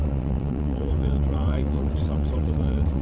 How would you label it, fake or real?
fake